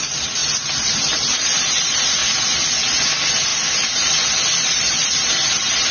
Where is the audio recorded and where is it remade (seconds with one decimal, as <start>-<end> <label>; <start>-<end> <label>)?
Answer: 0.0-2.2 remade; 2.2-2.7 recorded; 2.7-5.9 remade